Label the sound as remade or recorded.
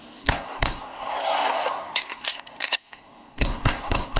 remade